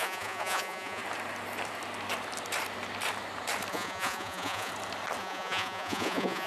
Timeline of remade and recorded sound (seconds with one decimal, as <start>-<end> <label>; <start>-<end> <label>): 0.0-1.0 remade; 1.0-3.7 recorded; 3.7-4.7 remade; 4.7-5.2 recorded; 5.2-6.5 remade